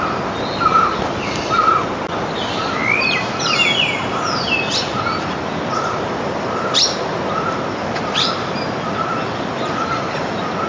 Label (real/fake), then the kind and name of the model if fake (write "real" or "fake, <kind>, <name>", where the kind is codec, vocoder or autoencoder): real